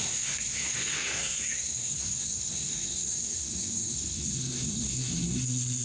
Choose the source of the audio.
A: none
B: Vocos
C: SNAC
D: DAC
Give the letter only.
C